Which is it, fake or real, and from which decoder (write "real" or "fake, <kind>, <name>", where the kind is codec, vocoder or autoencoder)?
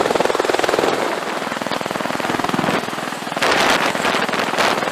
real